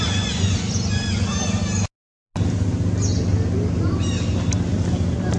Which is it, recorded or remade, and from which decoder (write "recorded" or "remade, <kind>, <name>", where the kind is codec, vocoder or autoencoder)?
recorded